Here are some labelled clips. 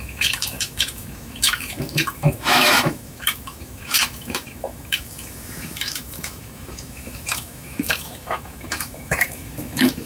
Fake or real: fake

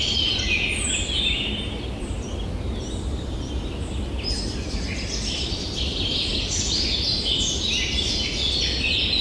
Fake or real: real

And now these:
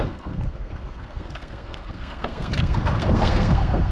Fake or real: fake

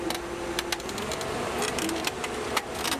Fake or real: real